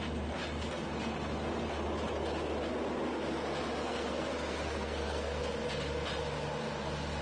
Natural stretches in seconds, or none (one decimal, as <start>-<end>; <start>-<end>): 0.0-3.8; 5.4-7.2

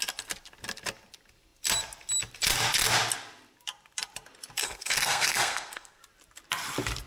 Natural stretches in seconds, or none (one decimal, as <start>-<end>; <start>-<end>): 0.0-4.6; 6.0-7.1

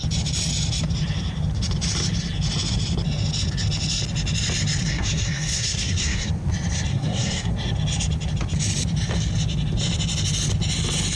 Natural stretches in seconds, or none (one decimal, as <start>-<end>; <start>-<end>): 0.0-4.8; 6.3-6.9; 7.5-11.2

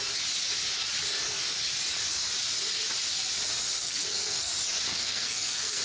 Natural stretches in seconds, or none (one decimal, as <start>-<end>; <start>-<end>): 0.0-3.8; 4.5-4.9

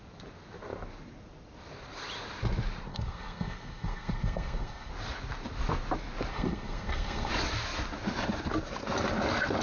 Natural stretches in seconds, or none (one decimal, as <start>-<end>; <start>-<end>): 0.0-2.9; 4.9-6.3; 7.3-9.6

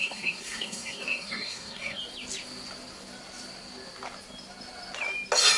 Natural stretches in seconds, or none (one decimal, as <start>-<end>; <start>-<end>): 2.0-5.6

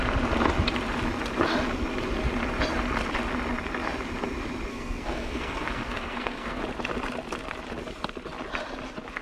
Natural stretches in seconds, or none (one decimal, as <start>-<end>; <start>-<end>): 0.0-4.7; 6.6-9.2